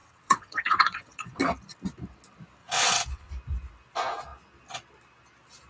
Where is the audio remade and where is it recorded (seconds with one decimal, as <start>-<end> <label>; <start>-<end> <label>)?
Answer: 0.0-1.4 remade; 1.4-2.6 recorded; 2.6-3.3 remade; 3.3-5.7 recorded